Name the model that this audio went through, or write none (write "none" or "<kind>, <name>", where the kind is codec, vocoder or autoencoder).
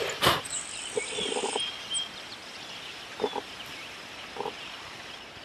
none